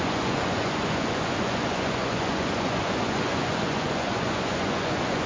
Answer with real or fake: fake